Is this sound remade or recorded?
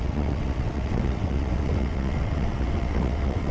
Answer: remade